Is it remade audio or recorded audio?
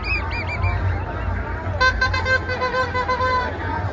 recorded